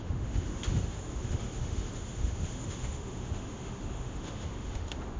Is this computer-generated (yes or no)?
yes